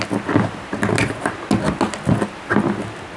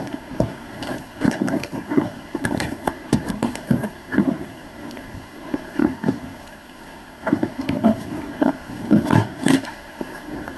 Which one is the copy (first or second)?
second